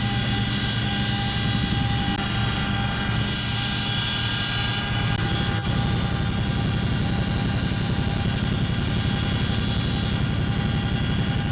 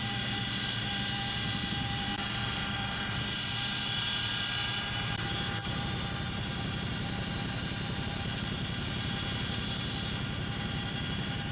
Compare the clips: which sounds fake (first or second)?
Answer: second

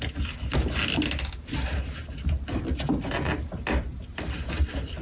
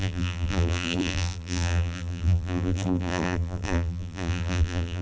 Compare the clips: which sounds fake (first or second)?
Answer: second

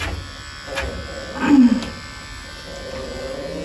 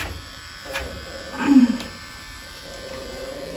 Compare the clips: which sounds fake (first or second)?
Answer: second